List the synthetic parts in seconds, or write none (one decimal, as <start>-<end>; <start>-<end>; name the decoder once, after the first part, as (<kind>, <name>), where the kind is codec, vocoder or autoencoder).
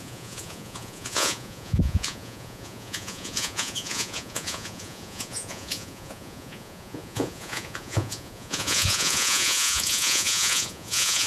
0.0-11.3 (vocoder, Vocos)